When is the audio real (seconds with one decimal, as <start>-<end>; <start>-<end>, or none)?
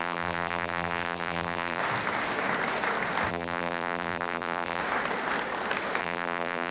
1.8-3.3; 4.8-6.0